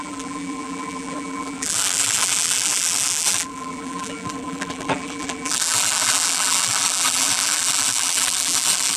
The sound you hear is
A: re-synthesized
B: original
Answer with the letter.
A